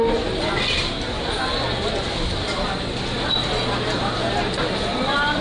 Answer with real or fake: real